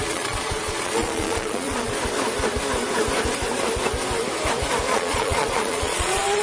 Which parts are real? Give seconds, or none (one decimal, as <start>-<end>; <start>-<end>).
1.9-4.9

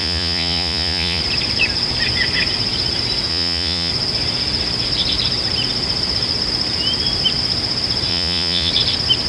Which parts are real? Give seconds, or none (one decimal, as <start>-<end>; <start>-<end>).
1.2-3.3; 3.9-8.1; 8.7-9.3

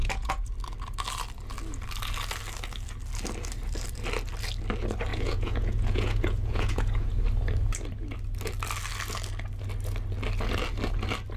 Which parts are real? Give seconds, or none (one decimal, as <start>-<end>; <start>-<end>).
0.5-5.1; 7.1-11.4